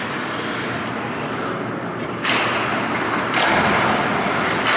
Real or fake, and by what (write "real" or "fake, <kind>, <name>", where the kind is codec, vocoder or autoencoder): real